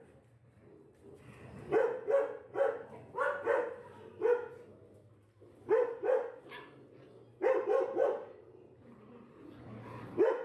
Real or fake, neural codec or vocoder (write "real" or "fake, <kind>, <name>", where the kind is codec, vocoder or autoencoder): real